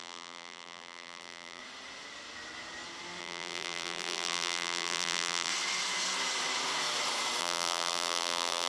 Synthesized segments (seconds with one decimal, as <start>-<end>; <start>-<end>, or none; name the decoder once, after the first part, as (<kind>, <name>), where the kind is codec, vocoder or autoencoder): 0.0-1.6 (vocoder, BigVGAN v2); 3.2-5.5; 7.4-8.7